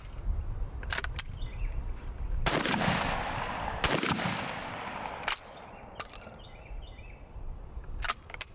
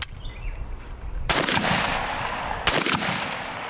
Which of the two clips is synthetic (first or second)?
first